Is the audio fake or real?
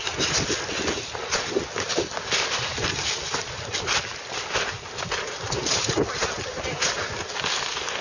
real